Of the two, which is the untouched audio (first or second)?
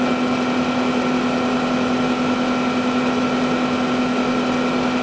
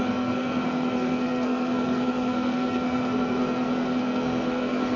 first